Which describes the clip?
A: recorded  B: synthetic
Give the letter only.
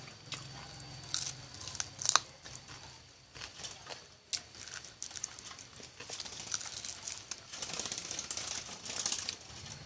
A